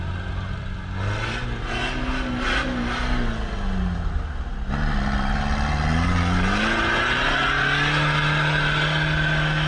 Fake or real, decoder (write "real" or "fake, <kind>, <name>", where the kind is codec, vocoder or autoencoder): real